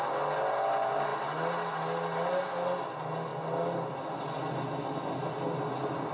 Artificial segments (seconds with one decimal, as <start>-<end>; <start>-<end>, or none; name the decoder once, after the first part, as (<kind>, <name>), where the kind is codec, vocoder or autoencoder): none